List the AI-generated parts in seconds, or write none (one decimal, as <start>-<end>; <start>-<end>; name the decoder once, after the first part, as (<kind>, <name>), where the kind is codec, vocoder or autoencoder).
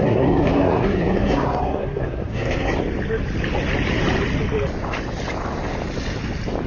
0.0-2.7 (codec, SNAC)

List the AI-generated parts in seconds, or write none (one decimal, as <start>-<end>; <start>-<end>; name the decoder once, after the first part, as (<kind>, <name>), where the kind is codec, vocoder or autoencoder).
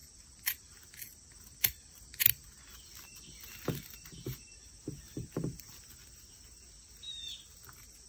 none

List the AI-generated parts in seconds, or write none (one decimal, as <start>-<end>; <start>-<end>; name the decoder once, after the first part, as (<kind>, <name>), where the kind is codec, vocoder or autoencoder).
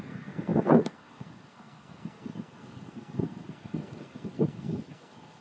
0.0-5.4 (codec, SNAC)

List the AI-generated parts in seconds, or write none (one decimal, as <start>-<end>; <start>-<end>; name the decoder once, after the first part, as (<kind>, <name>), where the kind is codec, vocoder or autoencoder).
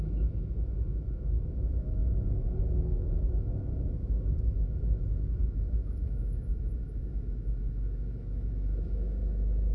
0.0-2.0 (autoencoder, DAC-VAE); 2.6-9.7